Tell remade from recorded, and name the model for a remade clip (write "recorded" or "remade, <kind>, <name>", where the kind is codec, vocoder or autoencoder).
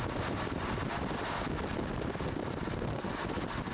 recorded